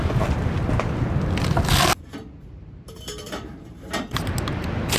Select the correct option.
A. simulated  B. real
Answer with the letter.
B